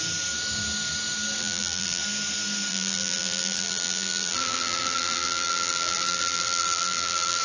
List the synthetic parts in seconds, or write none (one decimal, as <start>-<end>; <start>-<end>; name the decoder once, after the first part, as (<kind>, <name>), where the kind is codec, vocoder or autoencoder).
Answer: 1.4-2.0 (vocoder, BigVGAN v2); 2.7-7.4